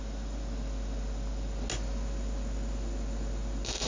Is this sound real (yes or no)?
yes